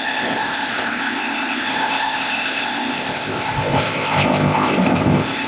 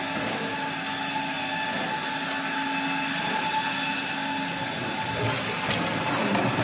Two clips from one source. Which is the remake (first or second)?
first